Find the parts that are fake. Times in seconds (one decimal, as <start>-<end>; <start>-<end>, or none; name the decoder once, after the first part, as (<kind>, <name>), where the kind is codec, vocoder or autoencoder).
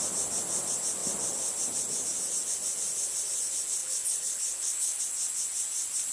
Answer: 3.8-5.0 (codec, HILCodec)